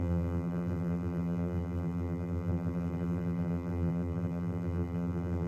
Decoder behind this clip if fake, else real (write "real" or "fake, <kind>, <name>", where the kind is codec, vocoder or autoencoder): fake, vocoder, BigVGAN v2